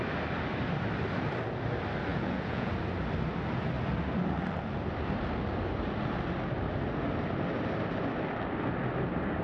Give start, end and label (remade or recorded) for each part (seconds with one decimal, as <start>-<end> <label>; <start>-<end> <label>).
0.0-2.1 recorded; 2.1-2.7 remade; 2.7-9.4 recorded